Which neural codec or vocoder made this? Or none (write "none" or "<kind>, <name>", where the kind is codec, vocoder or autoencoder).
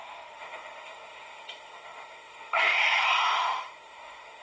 autoencoder, DAC-VAE